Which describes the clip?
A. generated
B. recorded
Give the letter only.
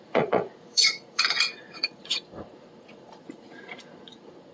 A